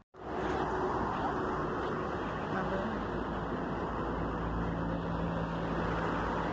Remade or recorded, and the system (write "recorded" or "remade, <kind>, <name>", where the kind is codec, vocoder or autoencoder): recorded